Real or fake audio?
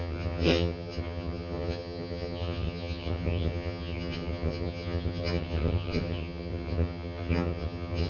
fake